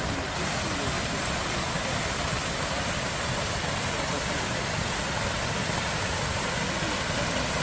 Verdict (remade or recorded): recorded